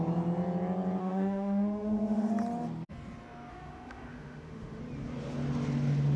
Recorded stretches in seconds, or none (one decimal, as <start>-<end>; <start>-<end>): 0.0-1.0; 2.3-3.5; 4.8-6.2